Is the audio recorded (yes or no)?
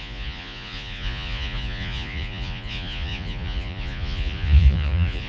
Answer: no